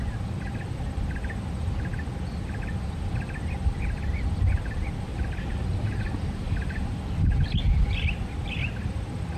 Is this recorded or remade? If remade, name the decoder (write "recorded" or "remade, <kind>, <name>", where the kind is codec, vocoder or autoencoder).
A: recorded